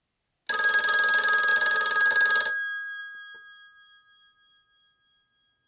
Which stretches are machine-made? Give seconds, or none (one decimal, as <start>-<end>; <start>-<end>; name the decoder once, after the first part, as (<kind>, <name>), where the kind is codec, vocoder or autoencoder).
none

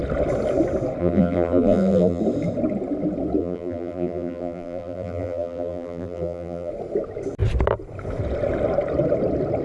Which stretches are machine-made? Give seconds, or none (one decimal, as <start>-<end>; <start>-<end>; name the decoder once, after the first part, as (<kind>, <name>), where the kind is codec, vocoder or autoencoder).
1.0-2.2 (vocoder, BigVGAN v2); 3.4-6.7

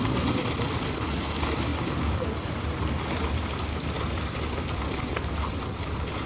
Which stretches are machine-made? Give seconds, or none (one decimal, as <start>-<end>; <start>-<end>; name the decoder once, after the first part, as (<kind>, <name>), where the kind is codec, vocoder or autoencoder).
none

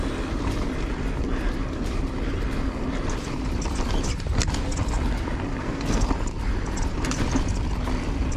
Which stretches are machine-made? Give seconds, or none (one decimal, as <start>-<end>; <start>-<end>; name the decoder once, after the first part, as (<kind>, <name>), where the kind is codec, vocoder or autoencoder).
5.6-6.1 (codec, SNAC)